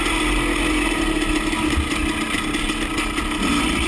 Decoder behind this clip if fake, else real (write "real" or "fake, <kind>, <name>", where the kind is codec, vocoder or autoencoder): real